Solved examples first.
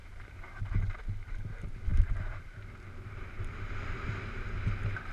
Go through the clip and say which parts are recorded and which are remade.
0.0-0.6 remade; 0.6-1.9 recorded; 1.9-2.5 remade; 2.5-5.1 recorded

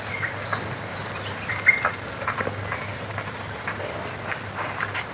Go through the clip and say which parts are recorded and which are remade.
0.0-0.9 recorded; 0.9-1.5 remade; 1.5-2.9 recorded; 2.9-3.8 remade; 3.8-5.1 recorded

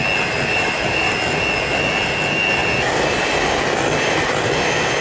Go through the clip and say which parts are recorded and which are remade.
0.0-0.5 recorded; 0.5-1.1 remade; 1.1-5.0 recorded

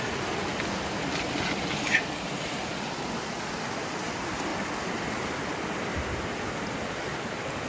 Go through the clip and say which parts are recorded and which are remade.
0.0-7.7 recorded

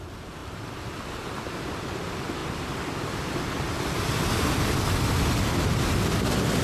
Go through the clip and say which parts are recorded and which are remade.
0.0-6.6 recorded

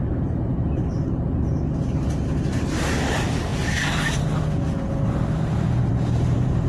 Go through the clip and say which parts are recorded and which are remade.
0.0-3.5 remade; 3.5-5.9 recorded; 5.9-6.7 remade